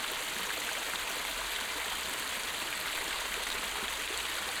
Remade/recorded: recorded